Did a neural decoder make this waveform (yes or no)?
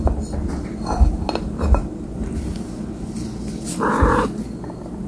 no